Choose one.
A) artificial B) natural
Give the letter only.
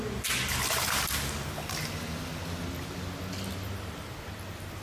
B